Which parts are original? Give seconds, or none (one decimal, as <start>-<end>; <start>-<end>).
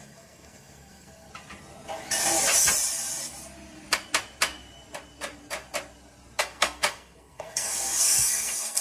1.3-6.4